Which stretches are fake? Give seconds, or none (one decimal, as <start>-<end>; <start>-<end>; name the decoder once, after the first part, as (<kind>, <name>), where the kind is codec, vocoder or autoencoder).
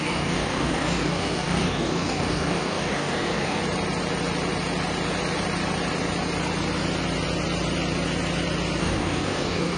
0.0-3.6 (codec, DAC); 8.8-9.8